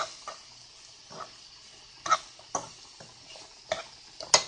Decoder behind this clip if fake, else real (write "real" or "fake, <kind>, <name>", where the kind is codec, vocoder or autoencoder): real